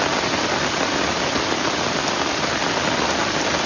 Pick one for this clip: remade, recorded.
recorded